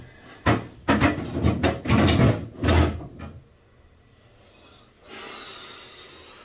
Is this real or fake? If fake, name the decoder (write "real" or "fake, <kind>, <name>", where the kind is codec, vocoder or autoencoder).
real